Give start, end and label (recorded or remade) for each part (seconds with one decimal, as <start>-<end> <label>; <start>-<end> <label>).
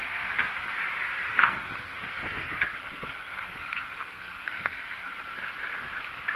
0.0-0.5 remade; 0.5-1.3 recorded; 1.3-5.1 remade; 5.1-6.4 recorded